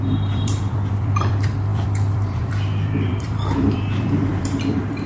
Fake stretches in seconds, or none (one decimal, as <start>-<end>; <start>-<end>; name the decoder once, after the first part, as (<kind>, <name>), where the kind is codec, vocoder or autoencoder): 0.0-5.1 (vocoder, BigVGAN v2)